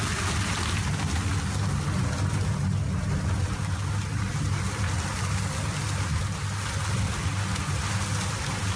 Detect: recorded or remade recorded